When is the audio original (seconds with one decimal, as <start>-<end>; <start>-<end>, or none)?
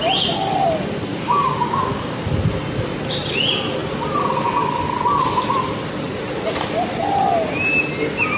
0.0-1.1; 2.3-8.4